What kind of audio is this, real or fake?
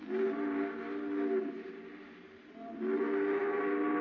real